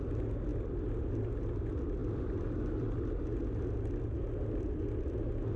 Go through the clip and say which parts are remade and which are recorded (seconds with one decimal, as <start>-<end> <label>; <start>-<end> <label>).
0.0-5.6 recorded